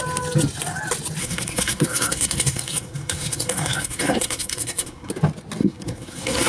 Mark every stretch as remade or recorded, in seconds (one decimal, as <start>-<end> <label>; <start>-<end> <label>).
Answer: 0.0-1.2 recorded; 1.2-5.1 remade; 5.1-5.6 recorded; 5.6-6.5 remade